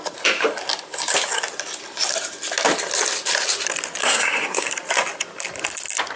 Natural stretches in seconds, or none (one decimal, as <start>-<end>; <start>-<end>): 0.0-4.0; 4.7-6.2